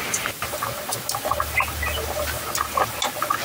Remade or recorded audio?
recorded